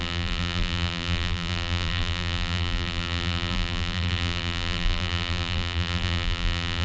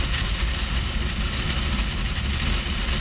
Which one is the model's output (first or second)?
first